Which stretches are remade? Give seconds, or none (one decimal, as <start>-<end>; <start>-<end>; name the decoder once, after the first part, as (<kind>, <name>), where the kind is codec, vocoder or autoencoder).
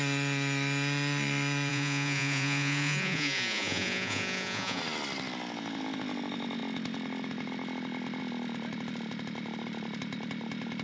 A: 1.7-4.8 (vocoder, Vocos)